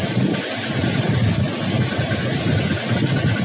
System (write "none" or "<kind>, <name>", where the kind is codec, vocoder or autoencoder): none